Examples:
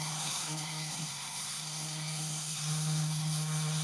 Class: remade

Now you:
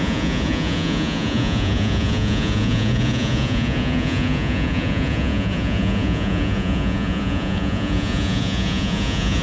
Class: remade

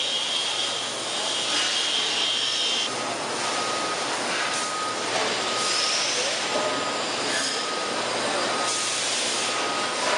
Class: recorded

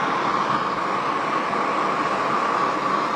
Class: recorded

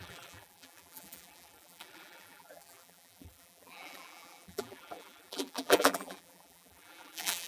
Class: remade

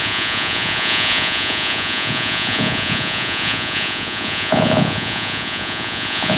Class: remade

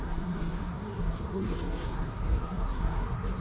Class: remade